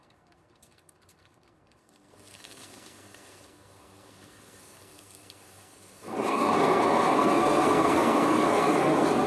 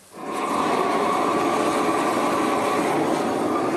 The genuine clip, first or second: second